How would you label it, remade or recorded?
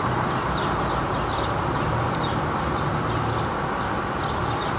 recorded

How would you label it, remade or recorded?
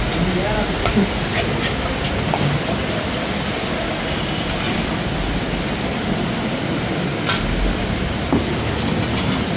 recorded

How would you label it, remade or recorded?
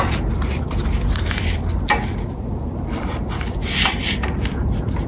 remade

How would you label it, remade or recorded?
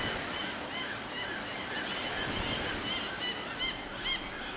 recorded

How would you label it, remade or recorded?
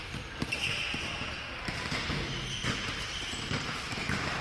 remade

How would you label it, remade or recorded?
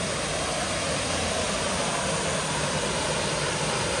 recorded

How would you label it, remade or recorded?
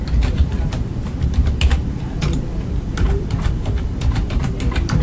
remade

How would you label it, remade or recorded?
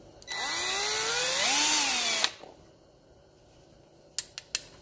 recorded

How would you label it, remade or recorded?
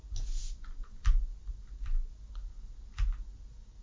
recorded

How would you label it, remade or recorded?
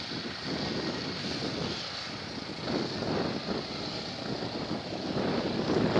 recorded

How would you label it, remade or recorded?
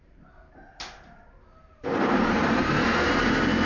remade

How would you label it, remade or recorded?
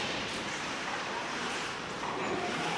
remade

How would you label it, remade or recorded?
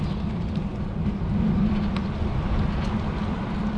remade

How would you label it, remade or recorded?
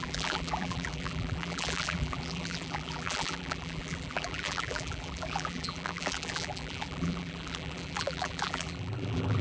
remade